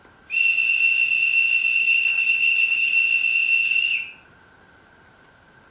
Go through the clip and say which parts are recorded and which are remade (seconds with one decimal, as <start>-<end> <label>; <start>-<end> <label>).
0.0-1.8 recorded; 1.8-2.9 remade; 2.9-5.7 recorded